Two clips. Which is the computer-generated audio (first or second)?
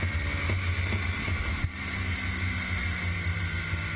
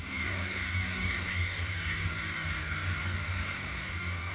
second